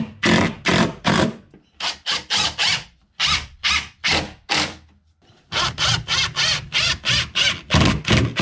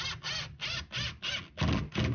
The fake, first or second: first